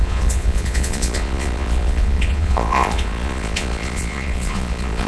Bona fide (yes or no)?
no